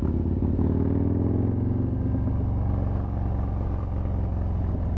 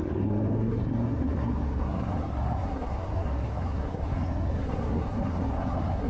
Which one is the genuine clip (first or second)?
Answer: first